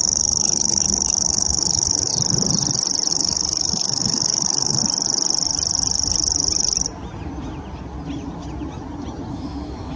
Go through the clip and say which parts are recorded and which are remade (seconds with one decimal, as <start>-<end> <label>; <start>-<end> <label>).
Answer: 0.0-2.1 remade; 2.1-3.1 recorded; 3.1-4.8 remade; 4.8-9.3 recorded; 9.3-10.0 remade